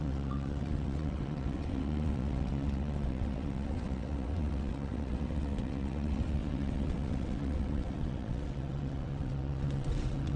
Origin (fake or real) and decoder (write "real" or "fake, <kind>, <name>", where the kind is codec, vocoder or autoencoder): fake, vocoder, WaveNeXt